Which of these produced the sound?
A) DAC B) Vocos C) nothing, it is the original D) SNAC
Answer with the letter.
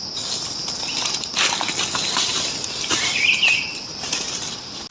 C